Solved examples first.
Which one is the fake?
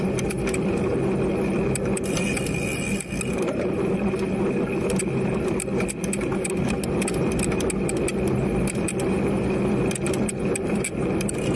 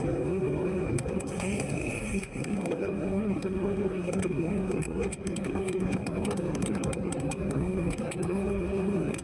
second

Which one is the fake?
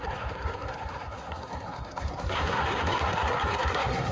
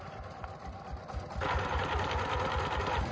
first